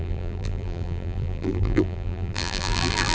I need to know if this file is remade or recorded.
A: remade